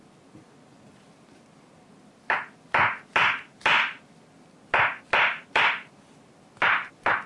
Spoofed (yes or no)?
no